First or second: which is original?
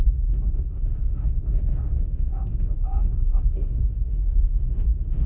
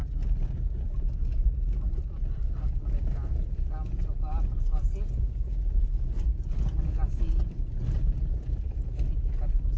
second